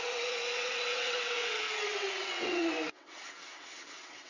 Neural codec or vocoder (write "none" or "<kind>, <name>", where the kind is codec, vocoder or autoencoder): vocoder, WaveNeXt